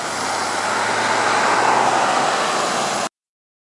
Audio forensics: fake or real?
real